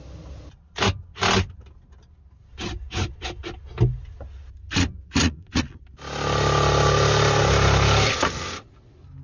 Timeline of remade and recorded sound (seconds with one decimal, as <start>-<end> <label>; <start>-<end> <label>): 0.0-5.2 recorded; 5.2-5.8 remade; 5.8-9.2 recorded